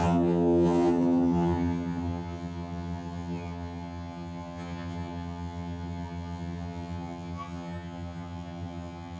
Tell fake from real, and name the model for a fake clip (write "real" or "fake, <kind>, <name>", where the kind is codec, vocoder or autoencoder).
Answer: fake, vocoder, HiFi-GAN